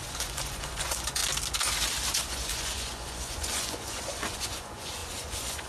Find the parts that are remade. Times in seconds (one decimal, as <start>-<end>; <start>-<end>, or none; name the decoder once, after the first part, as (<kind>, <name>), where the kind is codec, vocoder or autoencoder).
0.0-1.2 (vocoder, Vocos); 2.2-5.7